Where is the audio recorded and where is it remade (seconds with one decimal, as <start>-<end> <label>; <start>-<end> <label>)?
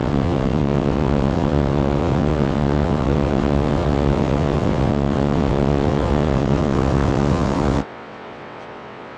0.0-9.2 remade